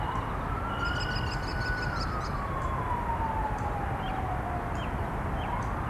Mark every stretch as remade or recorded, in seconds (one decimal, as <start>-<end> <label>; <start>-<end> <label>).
0.0-5.9 recorded